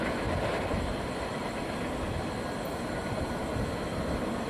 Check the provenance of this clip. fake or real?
real